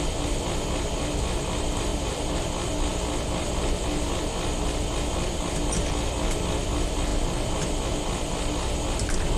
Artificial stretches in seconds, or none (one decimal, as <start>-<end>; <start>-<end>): 1.9-2.5